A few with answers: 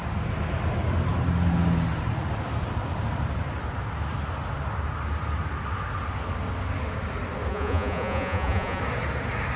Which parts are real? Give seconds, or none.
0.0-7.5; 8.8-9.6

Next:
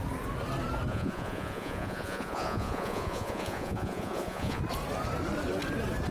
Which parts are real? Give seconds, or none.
0.0-0.9; 4.6-6.1

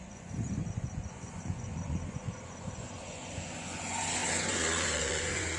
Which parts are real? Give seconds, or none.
none

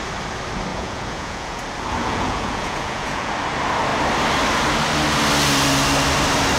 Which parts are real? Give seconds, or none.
0.0-0.7; 1.6-2.0; 3.3-6.6

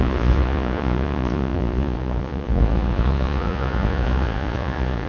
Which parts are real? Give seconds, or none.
none

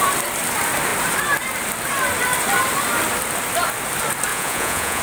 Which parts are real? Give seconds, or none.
0.0-4.3

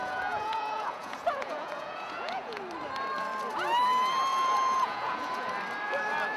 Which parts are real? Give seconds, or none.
2.6-4.3; 5.5-6.4

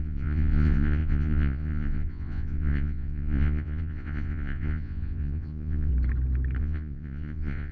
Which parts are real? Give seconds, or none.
5.9-6.6